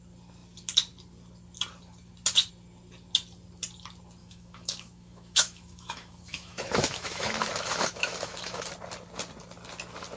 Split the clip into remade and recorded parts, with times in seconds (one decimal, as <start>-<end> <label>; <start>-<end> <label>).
0.0-4.2 recorded; 4.2-8.7 remade; 8.7-10.2 recorded